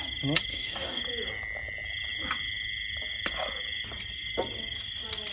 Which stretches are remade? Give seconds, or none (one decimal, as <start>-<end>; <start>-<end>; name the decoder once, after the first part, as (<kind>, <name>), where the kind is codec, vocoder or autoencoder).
0.5-1.0 (codec, DAC)